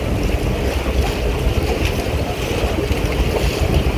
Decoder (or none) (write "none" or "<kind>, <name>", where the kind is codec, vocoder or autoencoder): none